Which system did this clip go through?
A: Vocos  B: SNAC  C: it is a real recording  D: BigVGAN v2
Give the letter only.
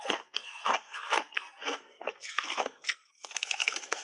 B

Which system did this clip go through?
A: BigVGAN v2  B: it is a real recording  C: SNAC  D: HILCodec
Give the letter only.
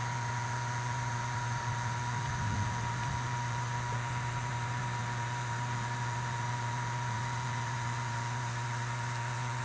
B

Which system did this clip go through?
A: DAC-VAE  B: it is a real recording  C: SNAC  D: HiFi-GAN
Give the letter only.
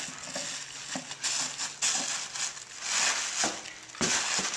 B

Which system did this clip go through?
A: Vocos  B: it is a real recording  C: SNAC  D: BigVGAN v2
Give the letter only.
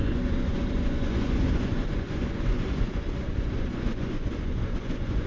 A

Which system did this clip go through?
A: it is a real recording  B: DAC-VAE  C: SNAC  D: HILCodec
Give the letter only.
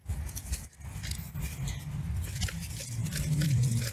A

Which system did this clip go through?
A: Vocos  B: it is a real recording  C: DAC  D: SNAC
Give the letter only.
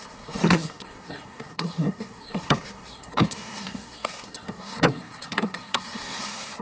D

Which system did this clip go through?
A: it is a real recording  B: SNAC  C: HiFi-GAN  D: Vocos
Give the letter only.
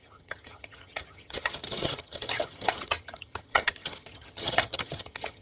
C